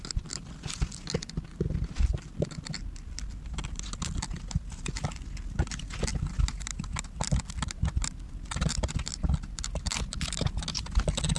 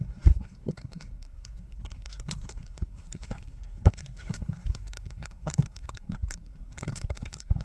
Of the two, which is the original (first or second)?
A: first